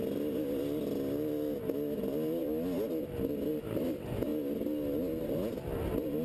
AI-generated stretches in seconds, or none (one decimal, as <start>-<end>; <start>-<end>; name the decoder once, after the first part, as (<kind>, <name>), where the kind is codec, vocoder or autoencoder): none